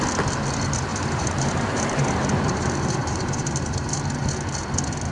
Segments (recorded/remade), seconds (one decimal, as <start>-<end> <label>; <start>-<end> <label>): 0.0-0.9 recorded; 0.9-4.0 remade; 4.0-5.1 recorded